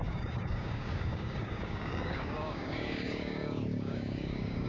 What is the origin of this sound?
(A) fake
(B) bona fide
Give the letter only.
A